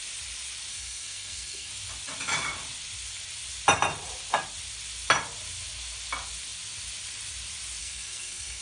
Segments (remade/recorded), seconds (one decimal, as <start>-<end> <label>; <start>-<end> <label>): 0.0-0.7 recorded; 0.7-1.7 remade; 1.7-7.8 recorded; 7.8-8.6 remade